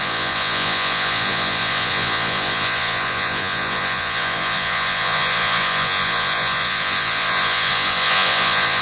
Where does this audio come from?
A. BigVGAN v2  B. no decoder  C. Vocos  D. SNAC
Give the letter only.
C